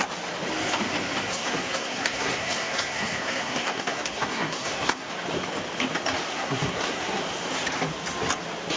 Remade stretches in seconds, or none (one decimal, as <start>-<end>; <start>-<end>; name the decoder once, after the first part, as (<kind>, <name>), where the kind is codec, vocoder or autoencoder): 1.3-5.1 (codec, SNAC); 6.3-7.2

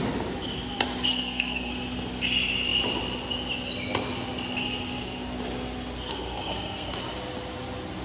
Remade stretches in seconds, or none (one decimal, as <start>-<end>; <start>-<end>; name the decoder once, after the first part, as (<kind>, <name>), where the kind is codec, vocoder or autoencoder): 1.1-1.7 (codec, SNAC); 6.1-6.9

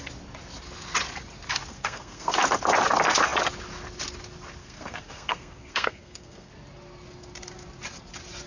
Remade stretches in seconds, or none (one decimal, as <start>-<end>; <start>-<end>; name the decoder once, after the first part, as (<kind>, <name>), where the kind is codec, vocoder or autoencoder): 1.7-2.3 (codec, SNAC); 4.6-6.5